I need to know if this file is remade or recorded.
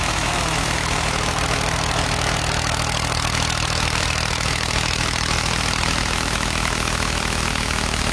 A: remade